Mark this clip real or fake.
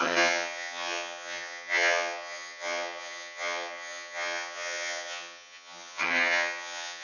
fake